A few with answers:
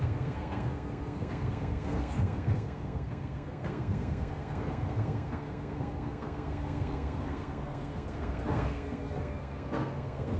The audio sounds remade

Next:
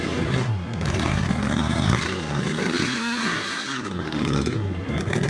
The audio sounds remade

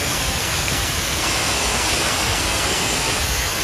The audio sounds remade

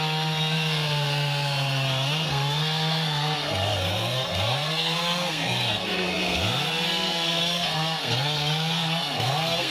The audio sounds remade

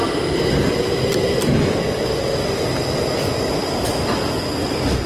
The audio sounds recorded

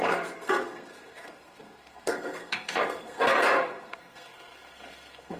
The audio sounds remade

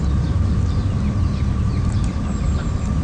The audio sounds recorded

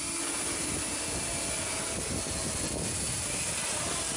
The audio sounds recorded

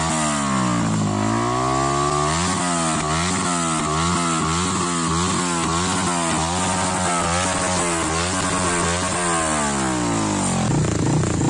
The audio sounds recorded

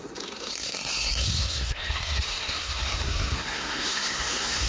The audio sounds remade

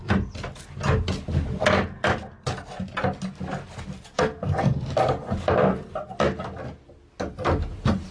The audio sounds recorded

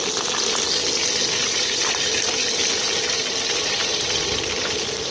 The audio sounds recorded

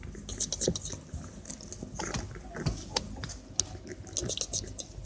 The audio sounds recorded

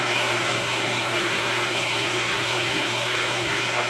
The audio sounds remade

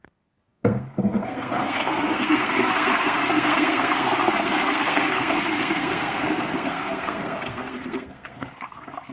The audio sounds remade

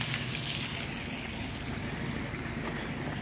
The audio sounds recorded